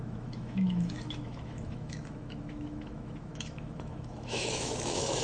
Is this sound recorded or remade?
remade